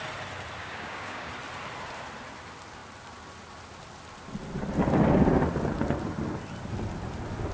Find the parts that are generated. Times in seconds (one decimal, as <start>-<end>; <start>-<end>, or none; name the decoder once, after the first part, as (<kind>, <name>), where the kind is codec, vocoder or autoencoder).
0.6-1.3 (codec, DAC)